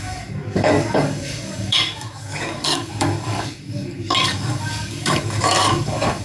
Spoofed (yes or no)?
yes